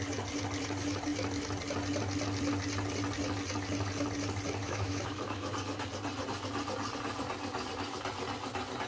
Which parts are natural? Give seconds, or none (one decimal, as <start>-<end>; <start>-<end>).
0.0-4.6; 5.5-8.9